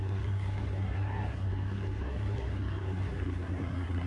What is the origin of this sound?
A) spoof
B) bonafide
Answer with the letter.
A